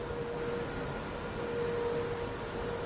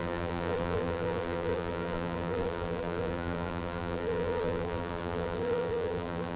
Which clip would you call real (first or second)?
first